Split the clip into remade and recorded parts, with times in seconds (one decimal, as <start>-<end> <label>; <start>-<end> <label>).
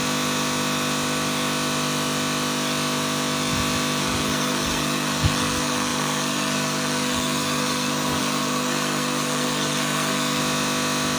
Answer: 0.0-4.0 recorded; 4.0-10.4 remade; 10.4-11.2 recorded